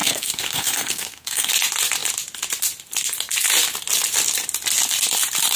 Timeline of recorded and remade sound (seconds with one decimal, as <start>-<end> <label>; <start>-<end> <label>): 0.0-1.5 remade; 1.5-5.6 recorded